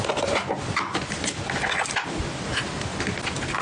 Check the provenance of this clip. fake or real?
real